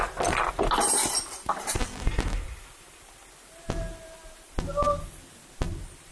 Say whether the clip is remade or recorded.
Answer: recorded